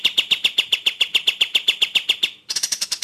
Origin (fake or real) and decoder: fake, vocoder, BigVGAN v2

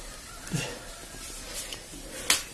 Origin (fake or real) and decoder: real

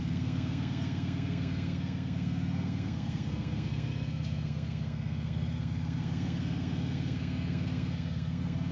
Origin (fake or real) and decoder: fake, codec, SNAC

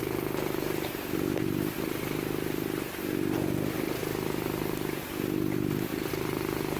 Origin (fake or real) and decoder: real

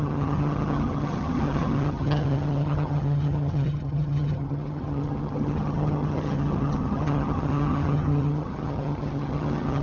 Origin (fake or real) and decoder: fake, vocoder, HiFi-GAN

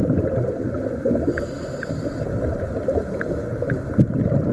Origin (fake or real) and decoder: real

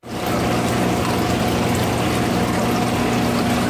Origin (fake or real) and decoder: real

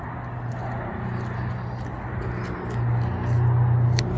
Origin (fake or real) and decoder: real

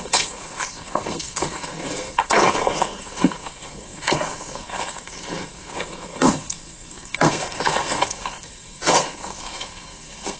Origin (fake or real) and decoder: fake, codec, SNAC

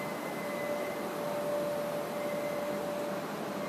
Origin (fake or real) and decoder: real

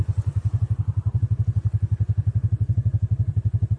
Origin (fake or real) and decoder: real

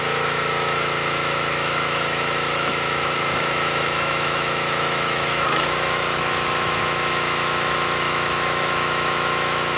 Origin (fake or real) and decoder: fake, autoencoder, DAC-VAE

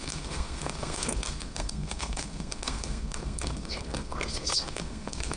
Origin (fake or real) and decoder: fake, codec, SNAC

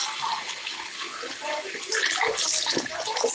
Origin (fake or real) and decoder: real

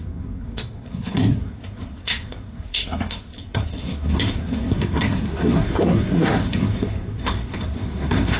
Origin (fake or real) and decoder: fake, codec, SNAC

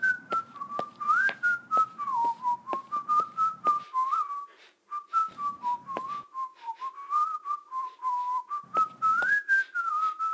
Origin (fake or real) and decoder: fake, vocoder, BigVGAN v2